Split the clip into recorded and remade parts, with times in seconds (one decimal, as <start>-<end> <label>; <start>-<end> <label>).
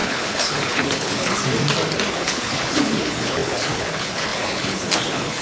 0.0-1.4 remade; 1.4-2.1 recorded; 2.1-5.4 remade